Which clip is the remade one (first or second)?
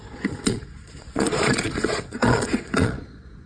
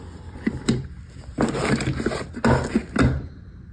first